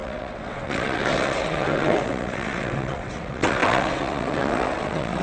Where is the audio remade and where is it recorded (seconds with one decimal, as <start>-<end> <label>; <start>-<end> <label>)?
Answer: 0.0-5.2 remade

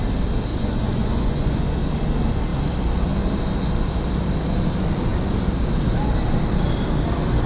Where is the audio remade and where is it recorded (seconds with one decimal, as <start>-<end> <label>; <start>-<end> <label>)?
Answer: 0.0-0.5 recorded; 0.5-1.6 remade; 1.6-7.5 recorded

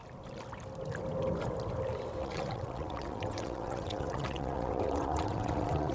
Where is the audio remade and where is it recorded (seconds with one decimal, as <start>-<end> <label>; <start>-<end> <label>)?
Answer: 0.0-2.2 recorded; 2.2-5.9 remade

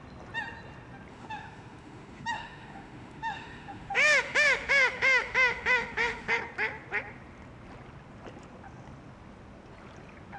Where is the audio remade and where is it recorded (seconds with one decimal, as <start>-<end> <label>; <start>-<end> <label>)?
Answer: 0.0-1.1 recorded; 1.1-6.3 remade; 6.3-10.4 recorded